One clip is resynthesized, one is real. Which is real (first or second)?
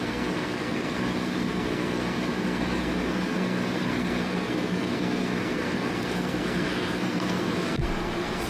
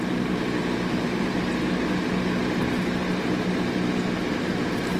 second